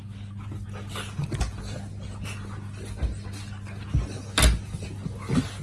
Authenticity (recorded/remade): recorded